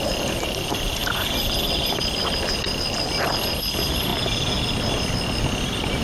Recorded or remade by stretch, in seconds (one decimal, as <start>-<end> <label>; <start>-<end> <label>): 0.0-6.0 recorded